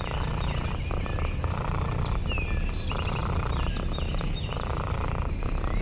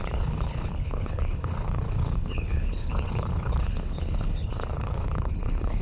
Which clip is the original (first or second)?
first